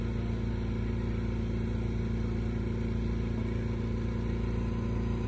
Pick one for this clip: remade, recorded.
recorded